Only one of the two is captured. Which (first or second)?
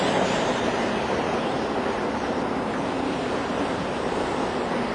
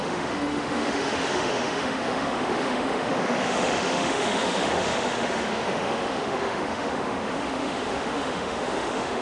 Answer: first